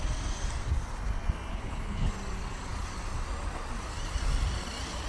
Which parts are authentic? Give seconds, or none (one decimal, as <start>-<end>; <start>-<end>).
0.0-1.5; 2.1-5.1